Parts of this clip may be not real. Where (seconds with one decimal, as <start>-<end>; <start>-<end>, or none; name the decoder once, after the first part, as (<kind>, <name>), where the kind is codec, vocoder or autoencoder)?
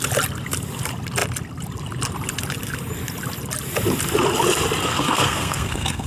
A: 4.8-6.1 (codec, SNAC)